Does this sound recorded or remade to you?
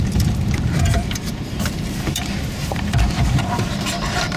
remade